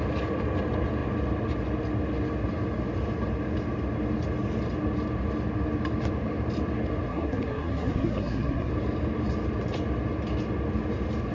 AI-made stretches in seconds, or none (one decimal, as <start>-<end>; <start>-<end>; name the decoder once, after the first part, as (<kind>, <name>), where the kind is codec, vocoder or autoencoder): 7.1-8.7 (codec, SNAC)